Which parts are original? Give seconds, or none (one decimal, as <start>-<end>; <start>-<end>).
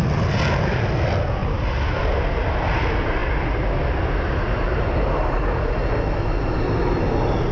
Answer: 0.0-7.5